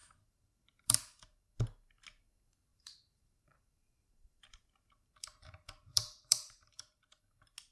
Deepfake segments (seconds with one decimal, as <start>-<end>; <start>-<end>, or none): 0.0-1.5; 2.7-7.2